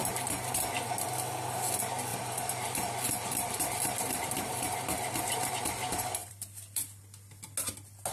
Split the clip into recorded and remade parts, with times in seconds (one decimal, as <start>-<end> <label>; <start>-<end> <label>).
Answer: 0.0-2.1 recorded; 2.1-5.5 remade; 5.5-6.2 recorded; 6.2-7.0 remade; 7.0-8.1 recorded